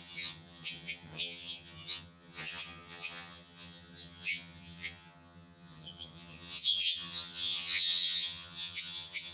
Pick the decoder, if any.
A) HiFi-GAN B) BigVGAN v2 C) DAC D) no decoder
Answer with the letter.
A